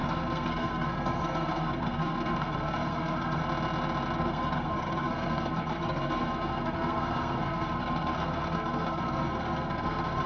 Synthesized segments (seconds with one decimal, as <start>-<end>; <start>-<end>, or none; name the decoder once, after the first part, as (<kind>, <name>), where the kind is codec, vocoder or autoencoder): 0.0-3.4 (codec, SNAC); 4.2-10.3